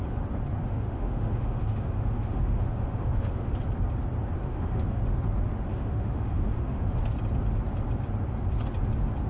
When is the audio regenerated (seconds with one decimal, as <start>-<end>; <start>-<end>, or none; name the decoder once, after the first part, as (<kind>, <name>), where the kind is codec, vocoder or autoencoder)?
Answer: 0.6-3.5 (autoencoder, DAC-VAE); 4.4-5.0; 5.7-7.0